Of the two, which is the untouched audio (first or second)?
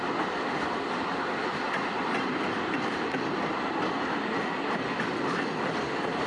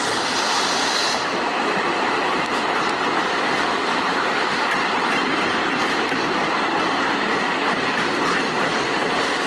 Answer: first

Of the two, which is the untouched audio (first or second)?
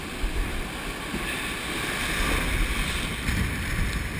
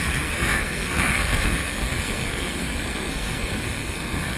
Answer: first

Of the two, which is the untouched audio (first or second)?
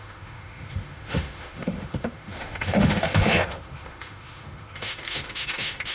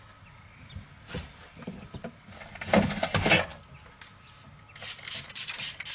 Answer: second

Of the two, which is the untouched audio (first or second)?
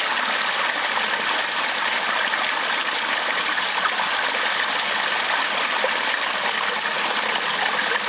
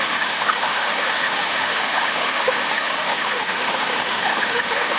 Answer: first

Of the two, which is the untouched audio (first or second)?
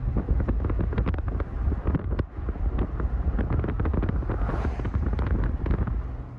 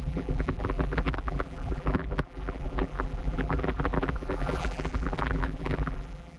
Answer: first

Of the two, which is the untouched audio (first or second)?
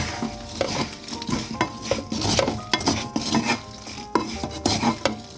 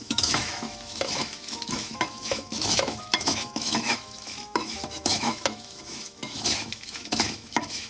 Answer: first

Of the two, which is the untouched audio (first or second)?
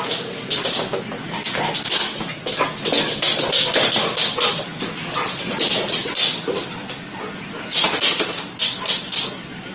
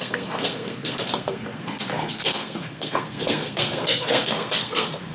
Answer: first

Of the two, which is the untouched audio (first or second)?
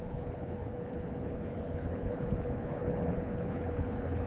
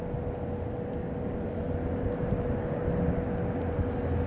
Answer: second